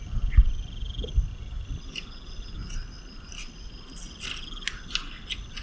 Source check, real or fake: real